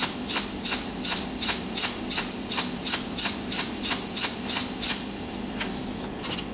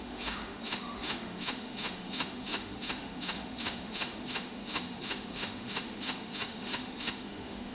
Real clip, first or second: first